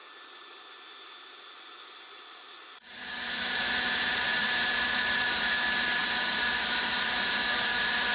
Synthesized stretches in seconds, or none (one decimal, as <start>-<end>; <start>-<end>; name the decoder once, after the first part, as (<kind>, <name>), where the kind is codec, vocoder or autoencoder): 1.8-8.1 (vocoder, BigVGAN v2)